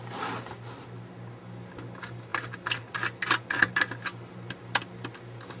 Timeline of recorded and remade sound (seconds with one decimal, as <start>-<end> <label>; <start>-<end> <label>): 0.0-5.6 recorded